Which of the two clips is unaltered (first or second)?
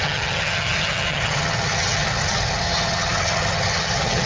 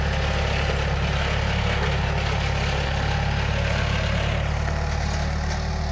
second